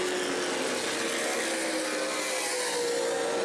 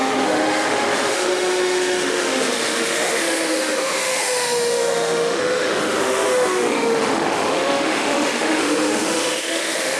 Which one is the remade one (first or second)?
second